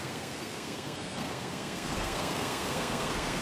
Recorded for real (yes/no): no